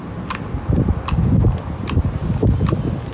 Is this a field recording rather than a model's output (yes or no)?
yes